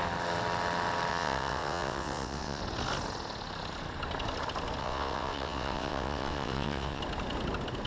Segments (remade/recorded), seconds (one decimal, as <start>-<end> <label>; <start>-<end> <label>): 0.0-1.1 recorded; 1.1-2.6 remade; 2.6-4.8 recorded; 4.8-7.0 remade; 7.0-7.9 recorded